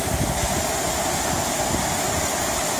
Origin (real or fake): real